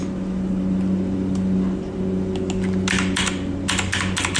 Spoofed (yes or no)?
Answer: no